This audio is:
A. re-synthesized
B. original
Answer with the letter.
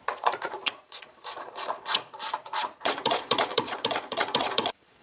A